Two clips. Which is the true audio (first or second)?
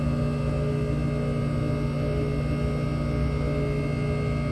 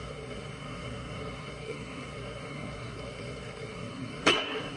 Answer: first